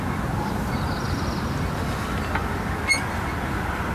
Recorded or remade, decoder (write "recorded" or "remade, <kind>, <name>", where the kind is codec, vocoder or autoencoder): recorded